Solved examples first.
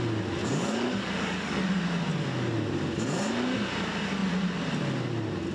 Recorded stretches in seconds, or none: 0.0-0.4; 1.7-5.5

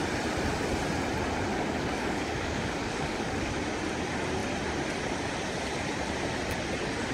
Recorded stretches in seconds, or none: 0.0-1.5; 3.5-7.1

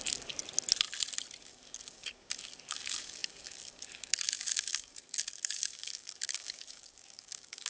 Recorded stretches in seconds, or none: 0.4-1.4

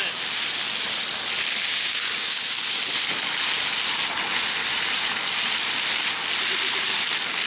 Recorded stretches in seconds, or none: 0.0-1.7; 2.8-7.5

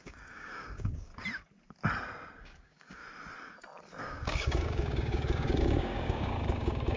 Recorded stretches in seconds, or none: 1.1-2.4; 3.0-4.0